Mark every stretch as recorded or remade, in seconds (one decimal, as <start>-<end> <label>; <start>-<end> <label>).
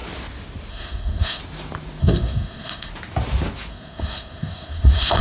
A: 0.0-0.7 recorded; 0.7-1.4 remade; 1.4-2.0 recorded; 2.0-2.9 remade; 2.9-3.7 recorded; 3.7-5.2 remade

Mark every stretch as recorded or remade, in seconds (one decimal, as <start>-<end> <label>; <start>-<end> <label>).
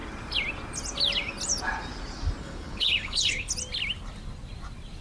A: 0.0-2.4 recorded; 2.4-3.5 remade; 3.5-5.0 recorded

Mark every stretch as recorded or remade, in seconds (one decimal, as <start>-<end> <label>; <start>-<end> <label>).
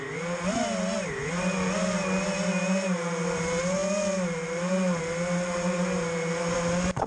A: 0.0-7.1 recorded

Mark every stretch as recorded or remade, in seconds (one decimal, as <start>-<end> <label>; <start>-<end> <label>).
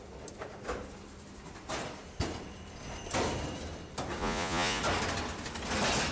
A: 0.0-4.2 recorded; 4.2-4.8 remade; 4.8-6.1 recorded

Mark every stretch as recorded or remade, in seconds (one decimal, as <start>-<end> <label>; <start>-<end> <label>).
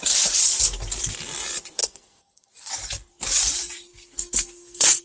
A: 0.0-1.8 recorded; 1.8-2.7 remade; 2.7-3.9 recorded; 3.9-5.0 remade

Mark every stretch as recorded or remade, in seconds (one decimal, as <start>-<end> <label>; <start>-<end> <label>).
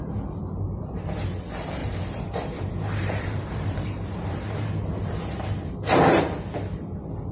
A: 0.0-1.8 recorded; 1.8-6.2 remade; 6.2-7.3 recorded